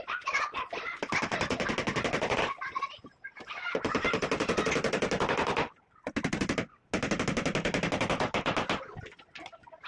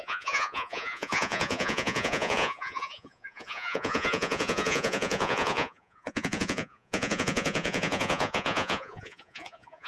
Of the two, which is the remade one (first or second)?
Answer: second